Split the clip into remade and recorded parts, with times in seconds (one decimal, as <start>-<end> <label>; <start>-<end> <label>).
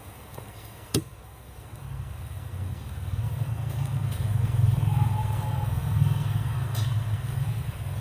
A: 0.0-8.0 remade